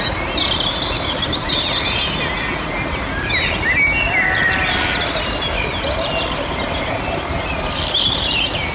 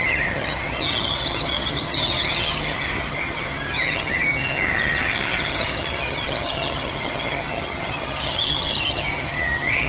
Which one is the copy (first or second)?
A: second